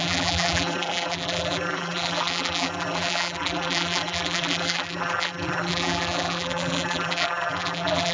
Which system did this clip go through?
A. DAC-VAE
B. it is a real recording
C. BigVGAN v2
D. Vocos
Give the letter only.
C